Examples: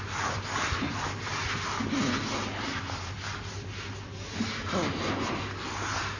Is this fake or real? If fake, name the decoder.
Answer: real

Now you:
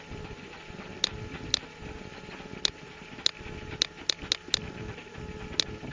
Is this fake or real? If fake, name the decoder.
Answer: real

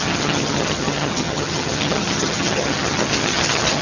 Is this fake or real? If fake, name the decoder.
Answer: fake, vocoder, HiFi-GAN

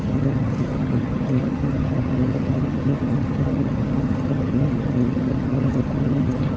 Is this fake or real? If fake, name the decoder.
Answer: fake, vocoder, HiFi-GAN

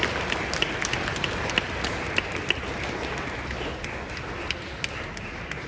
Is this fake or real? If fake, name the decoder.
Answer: real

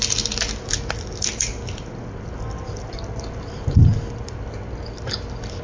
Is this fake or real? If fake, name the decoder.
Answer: real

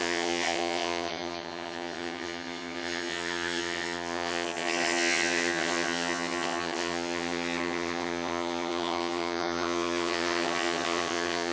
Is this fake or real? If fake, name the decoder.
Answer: fake, vocoder, HiFi-GAN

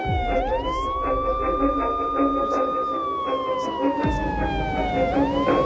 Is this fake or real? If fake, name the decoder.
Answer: real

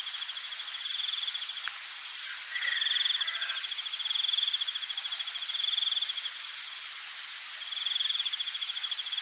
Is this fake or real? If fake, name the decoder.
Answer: real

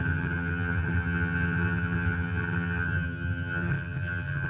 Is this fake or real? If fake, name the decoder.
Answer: fake, vocoder, HiFi-GAN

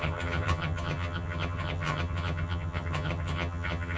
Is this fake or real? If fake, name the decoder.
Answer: fake, vocoder, HiFi-GAN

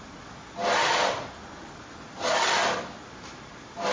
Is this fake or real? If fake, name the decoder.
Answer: real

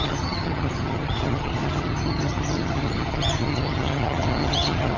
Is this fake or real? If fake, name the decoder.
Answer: fake, vocoder, HiFi-GAN